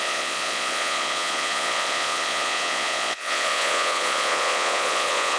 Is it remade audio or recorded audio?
remade